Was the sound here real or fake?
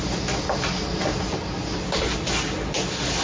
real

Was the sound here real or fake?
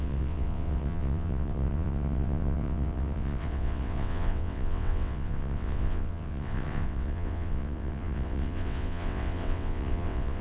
fake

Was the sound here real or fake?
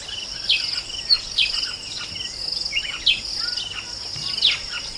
real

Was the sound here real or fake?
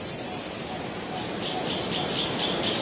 real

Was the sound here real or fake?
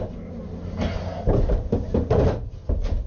real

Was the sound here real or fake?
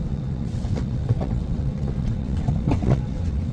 fake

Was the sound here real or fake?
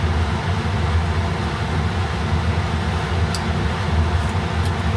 real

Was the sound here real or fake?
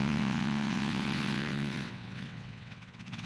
fake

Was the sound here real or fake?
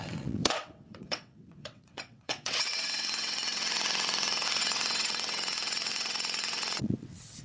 fake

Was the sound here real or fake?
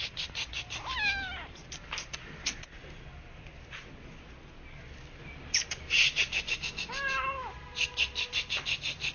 real